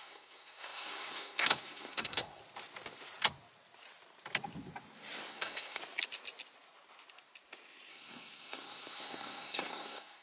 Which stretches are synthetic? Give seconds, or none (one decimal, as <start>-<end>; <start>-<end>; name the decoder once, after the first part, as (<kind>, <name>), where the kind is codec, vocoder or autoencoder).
0.0-2.4 (codec, SNAC); 5.3-5.8; 7.9-10.2